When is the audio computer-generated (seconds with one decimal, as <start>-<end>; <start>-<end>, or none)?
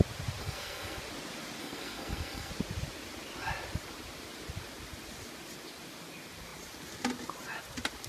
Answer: 0.4-1.0; 1.6-2.5